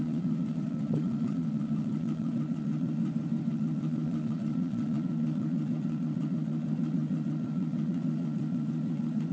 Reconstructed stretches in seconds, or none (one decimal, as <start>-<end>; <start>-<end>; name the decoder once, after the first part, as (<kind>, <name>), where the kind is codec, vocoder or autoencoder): 0.0-3.0 (vocoder, Vocos); 3.5-9.3